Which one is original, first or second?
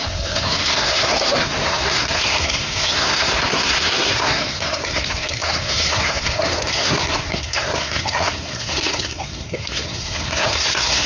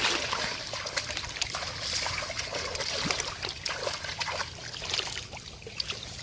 second